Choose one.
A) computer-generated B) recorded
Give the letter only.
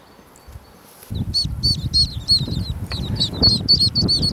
B